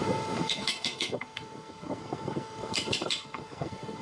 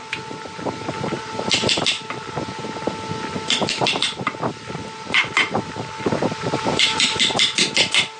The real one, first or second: second